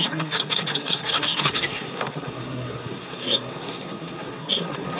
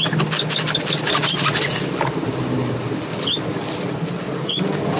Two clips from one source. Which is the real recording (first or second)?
second